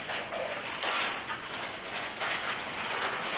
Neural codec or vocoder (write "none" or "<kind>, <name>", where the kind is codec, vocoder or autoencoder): vocoder, Vocos